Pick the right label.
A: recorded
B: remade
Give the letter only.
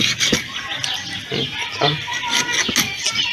A